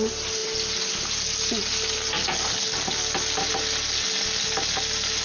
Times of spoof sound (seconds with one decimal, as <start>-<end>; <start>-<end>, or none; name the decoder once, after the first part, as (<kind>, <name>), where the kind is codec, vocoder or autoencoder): none

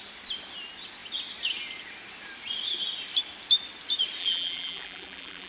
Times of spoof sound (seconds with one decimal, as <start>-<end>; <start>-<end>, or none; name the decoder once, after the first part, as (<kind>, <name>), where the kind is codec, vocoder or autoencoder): 4.2-5.5 (vocoder, BigVGAN v2)

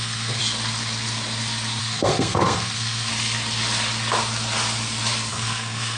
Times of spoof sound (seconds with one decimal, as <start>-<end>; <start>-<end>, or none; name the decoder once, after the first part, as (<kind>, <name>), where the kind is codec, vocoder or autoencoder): 0.0-0.4 (codec, SNAC); 1.8-3.1; 5.3-6.0

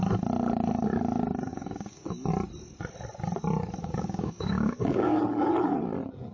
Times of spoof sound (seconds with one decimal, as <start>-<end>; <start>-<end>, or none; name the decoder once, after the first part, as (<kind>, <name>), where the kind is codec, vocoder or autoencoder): 1.5-2.3 (codec, DAC); 3.8-5.2

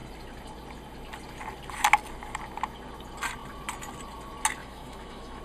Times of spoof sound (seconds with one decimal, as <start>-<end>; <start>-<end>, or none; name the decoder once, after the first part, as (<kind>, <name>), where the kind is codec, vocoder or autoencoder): 4.6-5.4 (autoencoder, DAC-VAE)